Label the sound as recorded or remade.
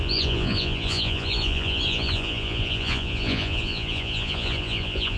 remade